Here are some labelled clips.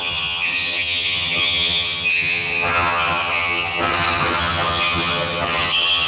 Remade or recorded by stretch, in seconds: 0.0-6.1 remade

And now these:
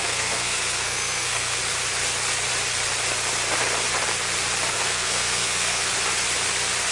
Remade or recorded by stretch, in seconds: 0.0-1.6 remade; 1.6-4.7 recorded; 4.7-5.9 remade; 5.9-6.9 recorded

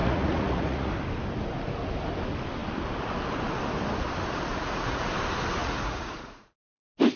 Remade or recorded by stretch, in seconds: 0.0-0.9 remade; 0.9-4.5 recorded; 4.5-5.1 remade; 5.1-5.6 recorded; 5.6-6.8 remade; 6.8-7.2 recorded

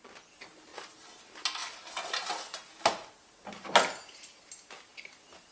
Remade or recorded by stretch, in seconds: 0.0-5.5 recorded

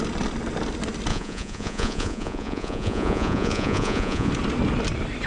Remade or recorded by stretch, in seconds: 0.0-1.1 recorded; 1.1-4.3 remade; 4.3-5.3 recorded

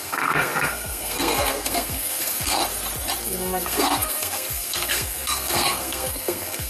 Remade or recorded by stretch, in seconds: 0.0-2.6 remade; 2.6-3.2 recorded; 3.2-6.7 remade